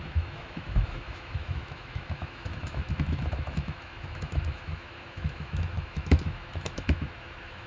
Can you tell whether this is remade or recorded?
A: remade